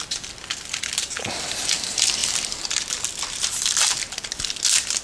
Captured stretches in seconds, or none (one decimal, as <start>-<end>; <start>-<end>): 0.0-2.2; 2.8-5.0